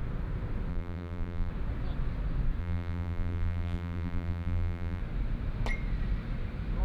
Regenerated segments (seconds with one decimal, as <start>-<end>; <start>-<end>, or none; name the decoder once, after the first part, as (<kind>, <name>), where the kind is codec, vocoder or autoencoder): 0.7-1.5 (vocoder, BigVGAN v2); 2.6-5.0